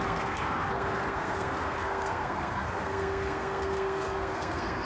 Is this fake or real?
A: fake